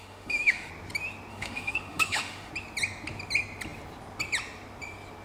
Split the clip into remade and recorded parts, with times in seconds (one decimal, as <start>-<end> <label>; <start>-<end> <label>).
0.0-0.7 remade; 0.7-1.3 recorded; 1.3-2.5 remade; 2.5-5.2 recorded